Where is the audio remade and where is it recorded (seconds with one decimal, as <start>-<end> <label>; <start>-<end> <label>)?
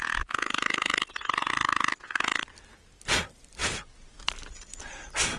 0.0-5.4 recorded